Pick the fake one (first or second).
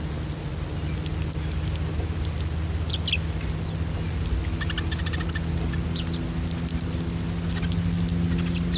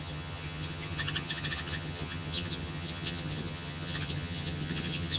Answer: second